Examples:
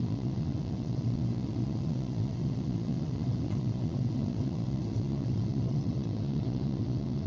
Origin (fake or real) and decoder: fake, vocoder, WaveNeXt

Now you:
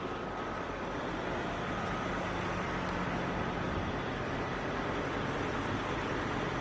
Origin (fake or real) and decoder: real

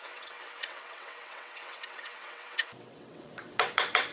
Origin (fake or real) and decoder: fake, vocoder, WaveNeXt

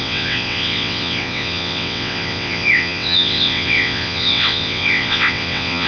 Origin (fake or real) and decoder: fake, vocoder, WaveNeXt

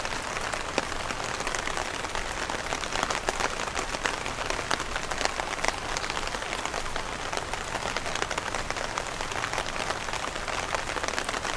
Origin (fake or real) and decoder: real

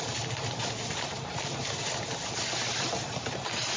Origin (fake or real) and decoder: real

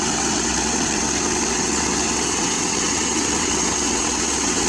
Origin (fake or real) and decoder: fake, vocoder, WaveNeXt